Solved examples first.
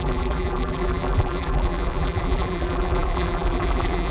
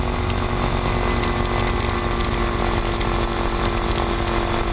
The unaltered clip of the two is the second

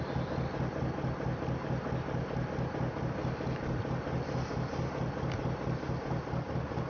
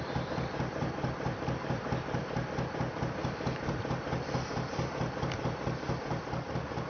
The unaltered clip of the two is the first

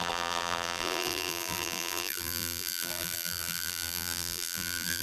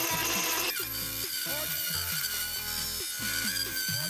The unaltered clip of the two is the second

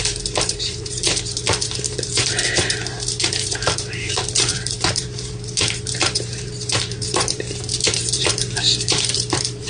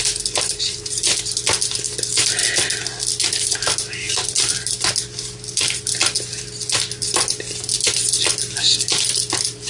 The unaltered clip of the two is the second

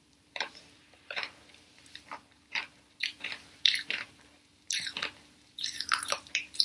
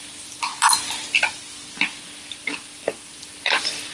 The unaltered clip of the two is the second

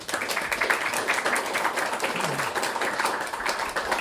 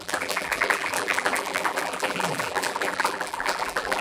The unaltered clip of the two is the first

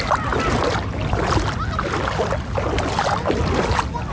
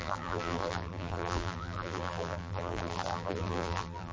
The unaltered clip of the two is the first